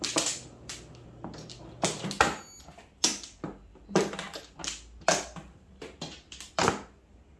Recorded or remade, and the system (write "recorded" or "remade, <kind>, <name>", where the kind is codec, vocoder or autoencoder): recorded